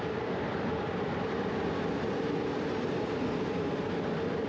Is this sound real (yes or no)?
yes